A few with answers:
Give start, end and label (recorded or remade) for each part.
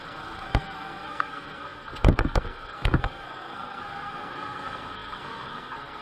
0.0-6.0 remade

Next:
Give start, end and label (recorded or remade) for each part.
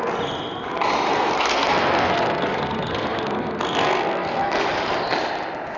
0.0-1.1 recorded; 1.1-4.6 remade; 4.6-5.8 recorded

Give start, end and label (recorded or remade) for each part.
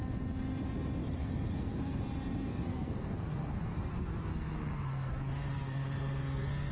0.0-1.0 recorded; 1.0-2.0 remade; 2.0-2.5 recorded; 2.5-3.9 remade; 3.9-4.3 recorded; 4.3-5.1 remade; 5.1-5.5 recorded; 5.5-6.7 remade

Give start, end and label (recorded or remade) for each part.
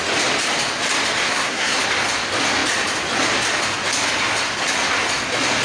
0.0-1.2 recorded; 1.2-1.8 remade; 1.8-5.6 recorded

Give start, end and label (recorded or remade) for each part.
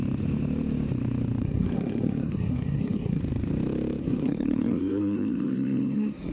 0.0-1.4 recorded; 1.4-3.2 remade; 3.2-4.0 recorded; 4.0-6.3 remade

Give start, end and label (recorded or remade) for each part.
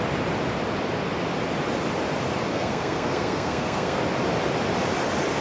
0.0-2.5 recorded; 2.5-4.0 remade; 4.0-5.4 recorded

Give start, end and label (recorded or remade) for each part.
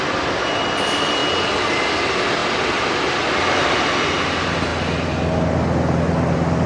0.0-6.7 recorded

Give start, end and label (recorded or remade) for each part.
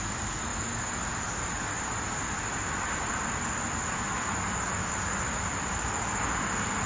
0.0-6.9 recorded